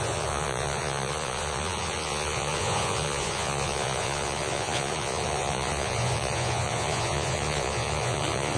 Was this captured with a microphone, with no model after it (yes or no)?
no